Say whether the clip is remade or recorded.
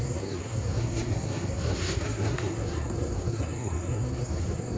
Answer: remade